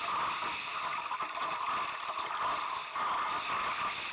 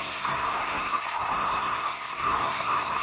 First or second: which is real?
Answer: first